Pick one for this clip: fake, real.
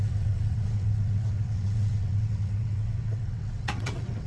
fake